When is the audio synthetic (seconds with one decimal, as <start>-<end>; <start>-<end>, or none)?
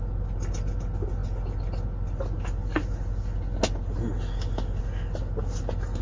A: none